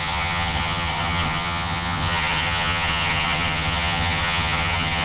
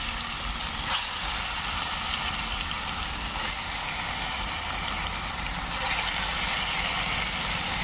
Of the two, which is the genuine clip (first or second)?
second